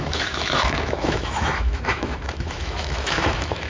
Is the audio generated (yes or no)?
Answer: yes